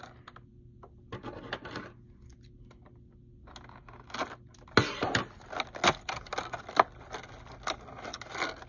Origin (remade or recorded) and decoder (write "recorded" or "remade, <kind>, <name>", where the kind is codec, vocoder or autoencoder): recorded